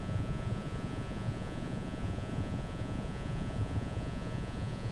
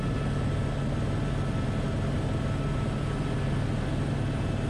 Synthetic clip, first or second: first